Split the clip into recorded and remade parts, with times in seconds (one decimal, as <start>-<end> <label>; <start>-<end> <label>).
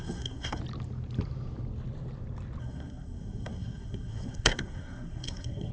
0.0-0.6 remade; 0.6-2.6 recorded; 2.6-5.7 remade